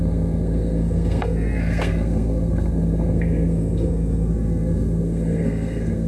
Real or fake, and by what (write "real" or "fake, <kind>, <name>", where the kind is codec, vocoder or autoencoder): fake, codec, SNAC